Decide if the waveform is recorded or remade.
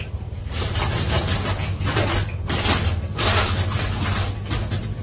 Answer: remade